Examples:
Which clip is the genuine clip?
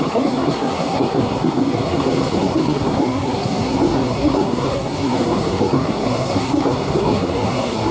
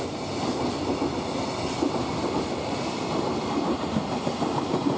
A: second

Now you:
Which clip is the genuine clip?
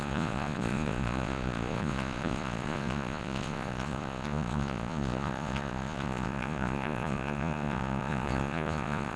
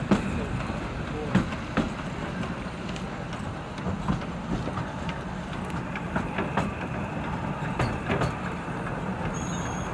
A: second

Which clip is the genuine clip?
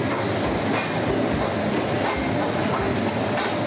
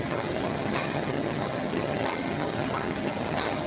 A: first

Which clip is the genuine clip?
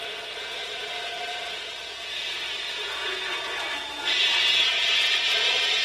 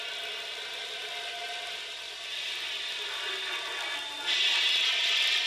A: second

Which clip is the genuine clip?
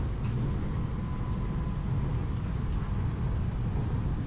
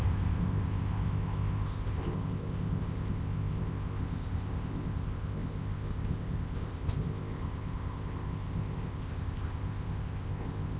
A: first